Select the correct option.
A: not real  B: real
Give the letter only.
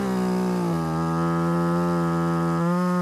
B